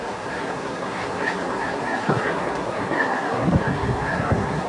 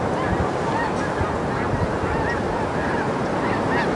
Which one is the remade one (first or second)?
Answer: first